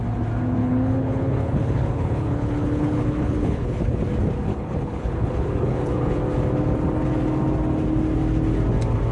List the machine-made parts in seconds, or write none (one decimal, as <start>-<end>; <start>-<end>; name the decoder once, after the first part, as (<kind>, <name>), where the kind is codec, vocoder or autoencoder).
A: 0.6-4.0 (codec, HILCodec); 4.5-6.2